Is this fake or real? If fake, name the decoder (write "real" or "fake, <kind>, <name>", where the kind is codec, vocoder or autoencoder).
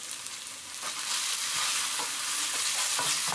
real